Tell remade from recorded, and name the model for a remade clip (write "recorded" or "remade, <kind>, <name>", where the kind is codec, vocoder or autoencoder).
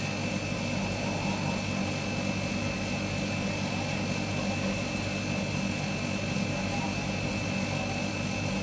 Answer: remade, vocoder, BigVGAN v2